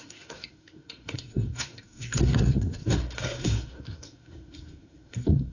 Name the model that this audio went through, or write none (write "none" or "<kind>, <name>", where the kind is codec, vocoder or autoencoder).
codec, SNAC